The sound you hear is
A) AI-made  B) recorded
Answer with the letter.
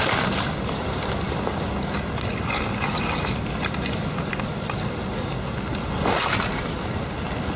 B